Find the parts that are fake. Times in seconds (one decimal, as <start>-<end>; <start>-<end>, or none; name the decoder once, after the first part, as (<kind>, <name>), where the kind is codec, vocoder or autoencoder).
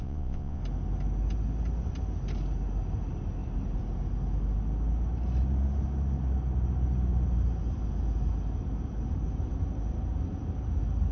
0.0-0.6 (vocoder, Vocos)